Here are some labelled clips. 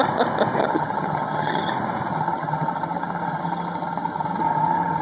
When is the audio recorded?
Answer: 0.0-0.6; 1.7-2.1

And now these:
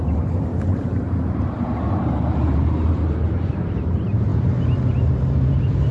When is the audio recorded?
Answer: none

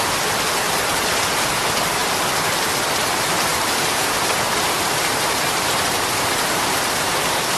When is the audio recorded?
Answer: 0.0-3.5; 7.1-7.6

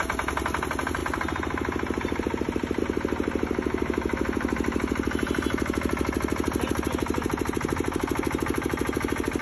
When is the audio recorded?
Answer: 0.0-9.4

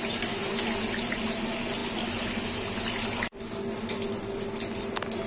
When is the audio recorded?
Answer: 0.0-5.3

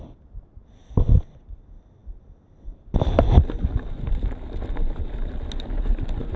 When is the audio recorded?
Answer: 0.0-6.4

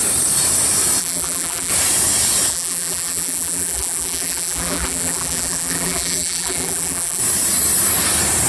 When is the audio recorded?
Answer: 0.0-1.0; 1.7-2.5; 7.2-8.5

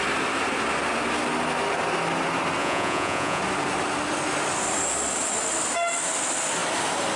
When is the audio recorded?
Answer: 0.0-2.6; 3.4-7.2